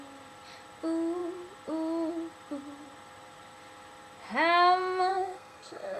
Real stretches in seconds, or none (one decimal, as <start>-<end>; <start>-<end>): 0.0-5.1